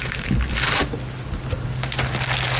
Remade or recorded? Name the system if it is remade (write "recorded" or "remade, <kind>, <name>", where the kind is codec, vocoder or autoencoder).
recorded